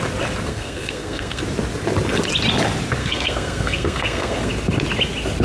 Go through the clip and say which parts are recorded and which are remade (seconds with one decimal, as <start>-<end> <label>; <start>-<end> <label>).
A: 0.0-0.5 recorded; 0.5-1.4 remade; 1.4-3.0 recorded; 3.0-4.5 remade; 4.5-5.4 recorded